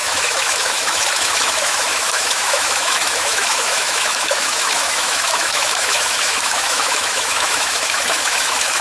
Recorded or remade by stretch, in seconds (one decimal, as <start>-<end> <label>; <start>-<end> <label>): 0.0-8.8 remade